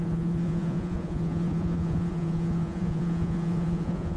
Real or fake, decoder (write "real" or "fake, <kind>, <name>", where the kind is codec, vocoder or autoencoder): fake, vocoder, Vocos